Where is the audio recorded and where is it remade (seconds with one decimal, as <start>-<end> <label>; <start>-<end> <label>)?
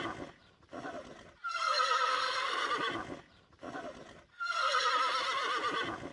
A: 0.0-1.5 recorded; 1.5-2.7 remade; 2.7-4.3 recorded; 4.3-4.9 remade; 4.9-6.1 recorded